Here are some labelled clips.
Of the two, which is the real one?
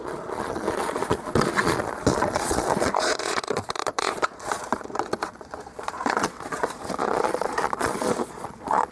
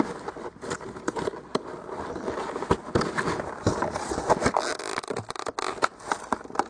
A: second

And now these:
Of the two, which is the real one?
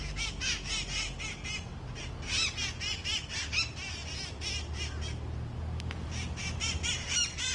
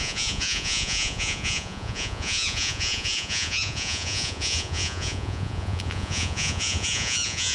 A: first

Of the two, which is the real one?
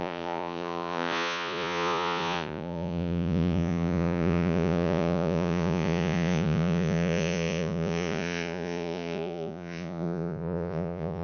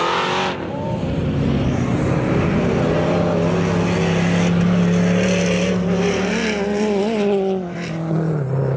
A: second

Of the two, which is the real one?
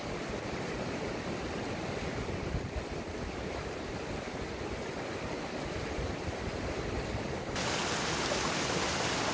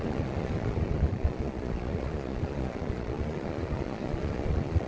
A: first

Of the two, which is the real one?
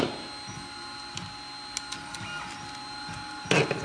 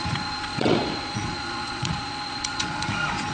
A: first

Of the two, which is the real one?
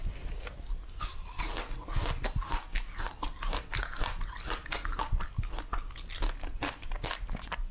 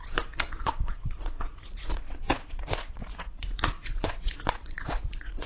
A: first